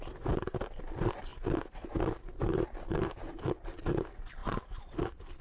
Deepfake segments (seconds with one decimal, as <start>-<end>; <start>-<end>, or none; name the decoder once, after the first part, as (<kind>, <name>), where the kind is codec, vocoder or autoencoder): none